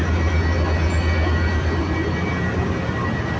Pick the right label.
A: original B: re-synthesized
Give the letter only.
A